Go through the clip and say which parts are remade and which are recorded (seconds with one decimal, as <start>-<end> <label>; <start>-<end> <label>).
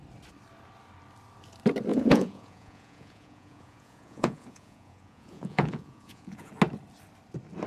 0.0-1.9 recorded; 1.9-6.5 remade; 6.5-7.7 recorded